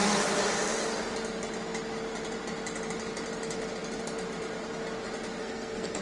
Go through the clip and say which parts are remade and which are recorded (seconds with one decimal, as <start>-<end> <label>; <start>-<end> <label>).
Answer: 0.0-5.4 recorded; 5.4-6.0 remade